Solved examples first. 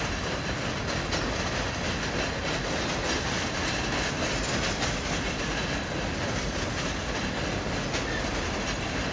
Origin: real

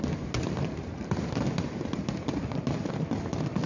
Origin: real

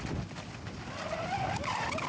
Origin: real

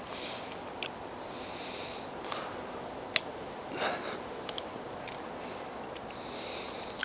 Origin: real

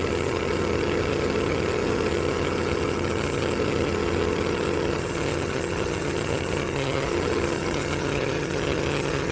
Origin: fake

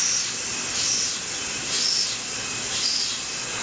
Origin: real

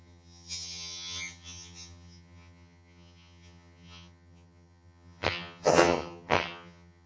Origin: fake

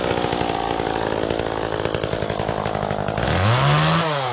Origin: real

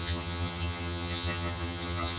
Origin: fake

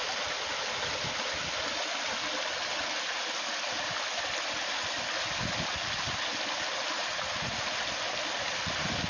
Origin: real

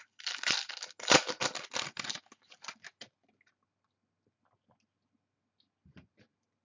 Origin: real